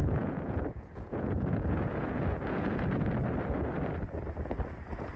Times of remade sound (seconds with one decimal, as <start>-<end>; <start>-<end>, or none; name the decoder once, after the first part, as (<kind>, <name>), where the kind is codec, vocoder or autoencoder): 0.0-3.1 (vocoder, Vocos)